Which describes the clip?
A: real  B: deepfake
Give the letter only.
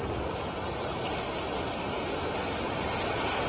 A